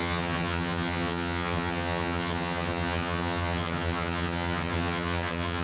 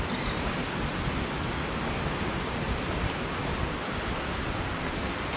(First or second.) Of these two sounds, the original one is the second